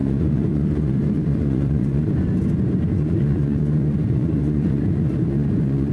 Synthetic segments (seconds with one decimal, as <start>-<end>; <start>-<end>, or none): 0.0-2.1; 2.9-5.9